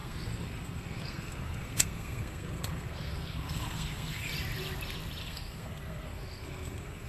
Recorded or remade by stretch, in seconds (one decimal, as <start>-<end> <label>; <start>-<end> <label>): 0.0-4.3 remade; 4.3-5.2 recorded; 5.2-7.1 remade